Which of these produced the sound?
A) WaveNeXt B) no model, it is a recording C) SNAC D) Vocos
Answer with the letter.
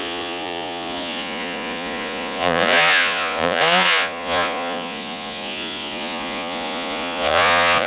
D